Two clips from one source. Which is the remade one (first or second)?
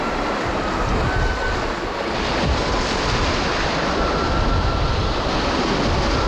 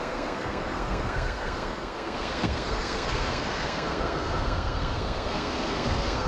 second